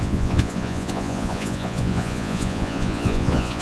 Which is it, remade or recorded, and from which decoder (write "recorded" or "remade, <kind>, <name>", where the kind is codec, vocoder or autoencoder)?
remade, vocoder, Vocos